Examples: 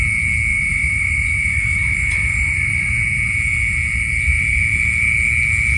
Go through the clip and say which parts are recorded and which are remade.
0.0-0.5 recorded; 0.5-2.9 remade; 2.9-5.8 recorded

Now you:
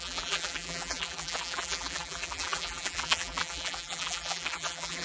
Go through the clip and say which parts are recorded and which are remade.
0.0-5.0 remade

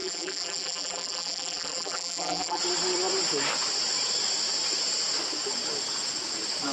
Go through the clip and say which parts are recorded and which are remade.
0.0-2.6 remade; 2.6-6.7 recorded